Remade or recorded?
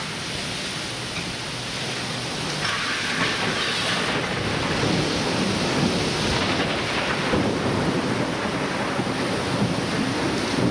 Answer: recorded